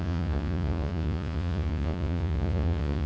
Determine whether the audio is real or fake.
fake